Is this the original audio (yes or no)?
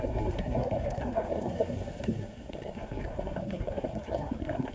no